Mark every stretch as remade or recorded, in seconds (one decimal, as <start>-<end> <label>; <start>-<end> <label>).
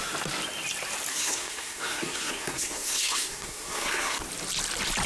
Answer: 0.0-1.1 recorded; 1.1-4.2 remade; 4.2-5.1 recorded